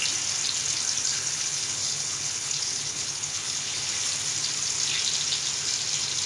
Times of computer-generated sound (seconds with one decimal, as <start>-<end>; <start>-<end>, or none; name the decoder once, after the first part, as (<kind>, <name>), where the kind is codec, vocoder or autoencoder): 1.1-3.9 (codec, HILCodec)